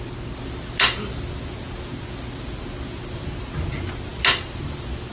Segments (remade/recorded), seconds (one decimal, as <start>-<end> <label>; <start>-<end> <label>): 0.0-5.1 recorded